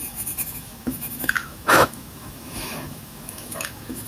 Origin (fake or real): fake